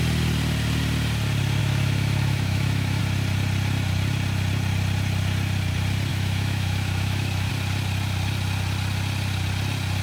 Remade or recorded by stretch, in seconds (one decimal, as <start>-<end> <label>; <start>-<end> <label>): 0.0-1.6 recorded; 1.6-3.0 remade; 3.0-6.1 recorded; 6.1-7.5 remade; 7.5-10.0 recorded